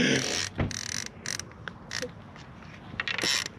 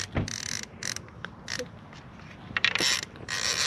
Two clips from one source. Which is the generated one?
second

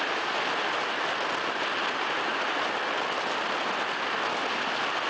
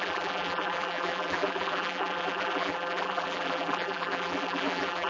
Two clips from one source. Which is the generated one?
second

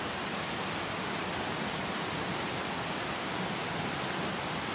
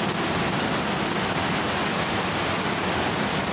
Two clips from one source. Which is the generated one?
first